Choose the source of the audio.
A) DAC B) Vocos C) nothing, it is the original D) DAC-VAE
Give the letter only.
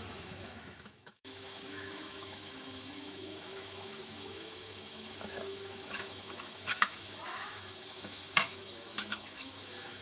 D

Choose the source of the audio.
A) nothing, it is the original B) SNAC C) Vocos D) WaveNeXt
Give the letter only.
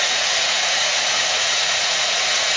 C